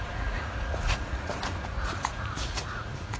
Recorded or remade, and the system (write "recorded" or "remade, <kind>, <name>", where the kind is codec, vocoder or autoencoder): remade, vocoder, Vocos